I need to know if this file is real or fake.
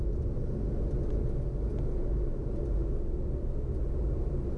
real